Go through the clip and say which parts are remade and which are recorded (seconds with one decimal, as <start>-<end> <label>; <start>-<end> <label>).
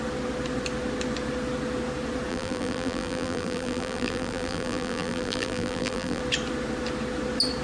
0.0-2.3 recorded; 2.3-6.2 remade; 6.2-7.6 recorded